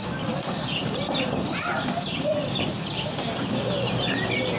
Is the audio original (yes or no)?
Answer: yes